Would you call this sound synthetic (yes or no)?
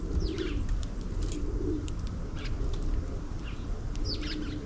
no